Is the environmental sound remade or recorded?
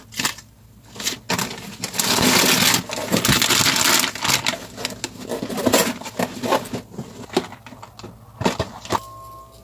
recorded